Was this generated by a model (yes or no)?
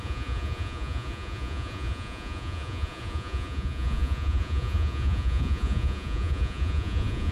yes